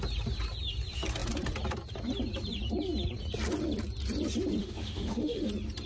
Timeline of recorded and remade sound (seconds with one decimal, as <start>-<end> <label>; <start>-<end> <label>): 0.0-4.6 recorded; 4.6-5.5 remade; 5.5-5.9 recorded